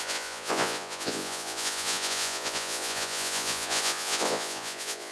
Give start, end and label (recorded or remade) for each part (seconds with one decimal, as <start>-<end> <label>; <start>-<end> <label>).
0.0-5.1 remade